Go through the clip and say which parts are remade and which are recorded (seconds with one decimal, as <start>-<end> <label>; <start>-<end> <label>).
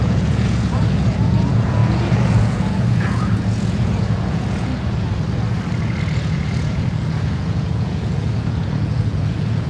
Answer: 0.0-4.7 remade; 4.7-6.0 recorded; 6.0-9.7 remade